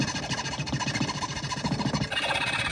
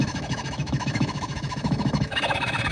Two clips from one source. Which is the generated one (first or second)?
second